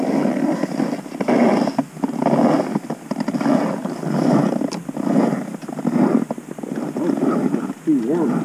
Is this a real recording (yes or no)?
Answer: yes